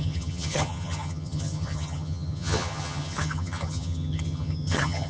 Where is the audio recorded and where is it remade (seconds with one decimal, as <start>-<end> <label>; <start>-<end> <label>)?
0.0-5.1 remade